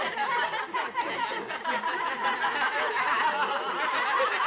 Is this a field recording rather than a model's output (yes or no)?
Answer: yes